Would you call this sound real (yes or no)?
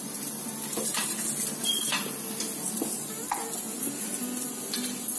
yes